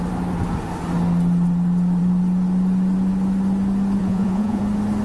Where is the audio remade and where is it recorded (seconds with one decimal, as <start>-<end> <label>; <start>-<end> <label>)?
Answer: 0.0-4.0 recorded; 4.0-4.6 remade; 4.6-5.0 recorded

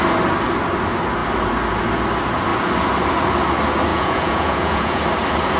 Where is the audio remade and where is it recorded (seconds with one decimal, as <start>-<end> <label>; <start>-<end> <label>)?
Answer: 0.0-3.9 recorded; 3.9-5.0 remade; 5.0-5.6 recorded